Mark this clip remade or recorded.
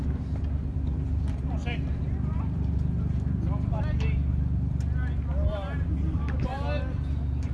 recorded